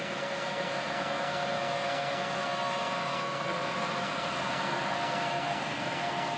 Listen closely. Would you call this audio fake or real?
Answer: fake